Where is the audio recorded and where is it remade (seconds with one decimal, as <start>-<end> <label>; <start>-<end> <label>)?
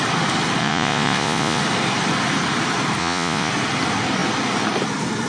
0.0-0.6 recorded; 0.6-1.6 remade; 1.6-3.0 recorded; 3.0-3.5 remade; 3.5-5.3 recorded